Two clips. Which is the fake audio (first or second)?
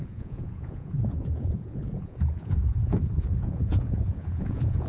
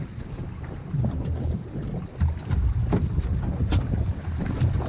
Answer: first